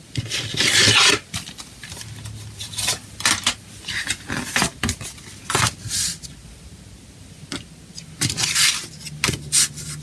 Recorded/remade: recorded